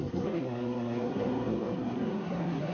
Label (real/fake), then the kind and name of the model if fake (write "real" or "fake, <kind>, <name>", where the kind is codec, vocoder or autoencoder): fake, codec, SNAC